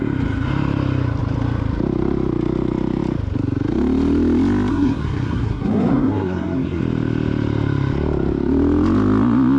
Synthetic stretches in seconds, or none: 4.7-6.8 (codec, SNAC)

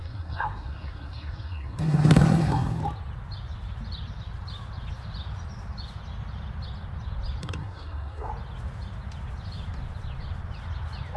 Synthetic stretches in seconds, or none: 0.0-2.8 (codec, SNAC); 7.4-8.3

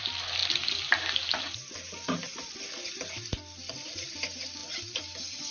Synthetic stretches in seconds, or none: none

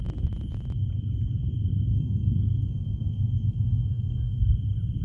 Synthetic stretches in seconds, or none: 1.9-4.4 (codec, SNAC)

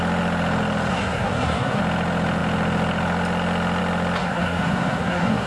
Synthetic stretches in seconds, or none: 0.9-1.8 (codec, SNAC); 4.2-5.5

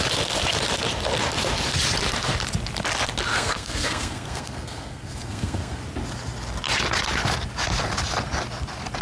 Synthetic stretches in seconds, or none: 3.3-5.8 (codec, SNAC)

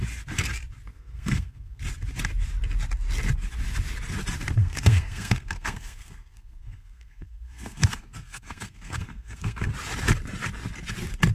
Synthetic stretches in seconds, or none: 0.9-1.8 (codec, SNAC); 4.6-9.7

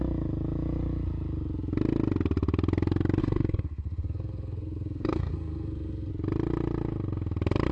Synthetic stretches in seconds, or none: 3.2-6.1 (codec, SNAC)